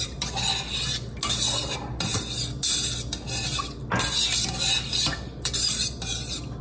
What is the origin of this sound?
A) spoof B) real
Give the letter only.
B